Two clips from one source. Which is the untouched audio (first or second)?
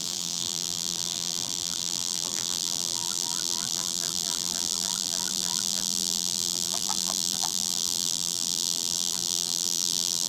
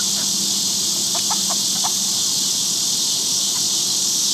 second